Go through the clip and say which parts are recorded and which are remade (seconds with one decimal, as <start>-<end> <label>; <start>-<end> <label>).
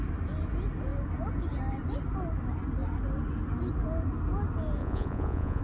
0.0-4.8 recorded; 4.8-5.6 remade